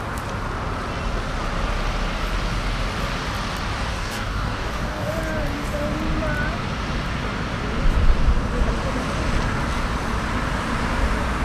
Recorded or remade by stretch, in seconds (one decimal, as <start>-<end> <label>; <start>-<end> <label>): 0.0-3.9 recorded; 3.9-5.1 remade; 5.1-11.4 recorded